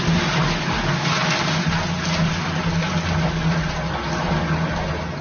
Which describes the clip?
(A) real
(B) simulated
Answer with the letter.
A